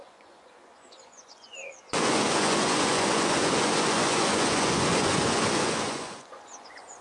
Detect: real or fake fake